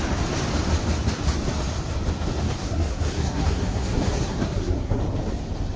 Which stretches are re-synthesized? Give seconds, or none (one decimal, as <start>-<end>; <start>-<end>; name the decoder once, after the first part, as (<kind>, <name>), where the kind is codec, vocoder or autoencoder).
2.6-5.0 (codec, SNAC)